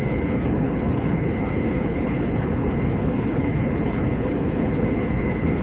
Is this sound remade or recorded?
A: remade